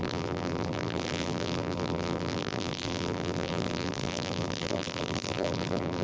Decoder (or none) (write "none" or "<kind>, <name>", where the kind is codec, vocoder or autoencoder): vocoder, BigVGAN v2